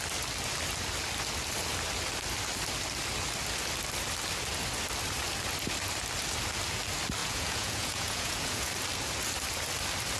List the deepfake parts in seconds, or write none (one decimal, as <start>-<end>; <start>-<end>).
7.2-8.7